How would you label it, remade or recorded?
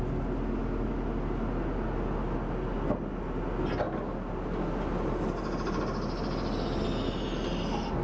recorded